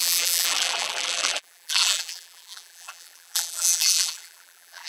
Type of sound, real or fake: fake